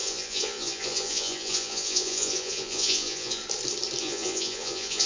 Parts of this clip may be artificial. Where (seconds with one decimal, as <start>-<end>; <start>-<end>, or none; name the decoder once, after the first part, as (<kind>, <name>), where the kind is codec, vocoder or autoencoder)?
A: 0.0-3.4 (vocoder, Vocos); 4.0-5.1